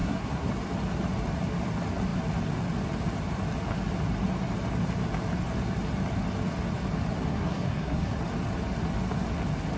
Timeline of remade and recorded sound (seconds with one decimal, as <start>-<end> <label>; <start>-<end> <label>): 0.0-0.5 remade; 0.5-7.3 recorded; 7.3-8.2 remade; 8.2-9.8 recorded